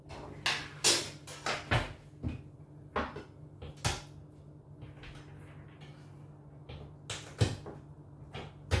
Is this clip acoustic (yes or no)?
yes